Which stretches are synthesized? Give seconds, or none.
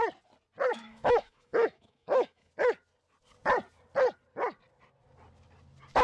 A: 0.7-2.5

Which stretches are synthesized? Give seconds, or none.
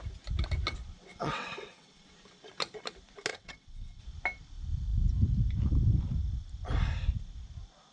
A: 1.1-2.1; 3.3-4.0